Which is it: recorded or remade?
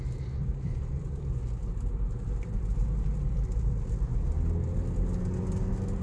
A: recorded